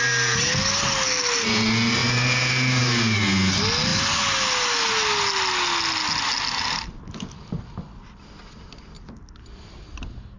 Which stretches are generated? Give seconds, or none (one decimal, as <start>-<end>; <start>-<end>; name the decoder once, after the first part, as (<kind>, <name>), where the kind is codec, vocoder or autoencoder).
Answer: none